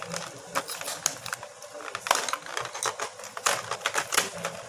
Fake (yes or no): no